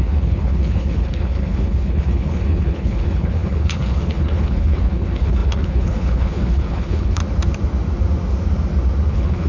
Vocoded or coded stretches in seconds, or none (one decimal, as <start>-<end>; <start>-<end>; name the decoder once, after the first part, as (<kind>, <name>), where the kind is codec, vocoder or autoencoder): 0.0-7.2 (codec, HILCodec); 9.1-9.5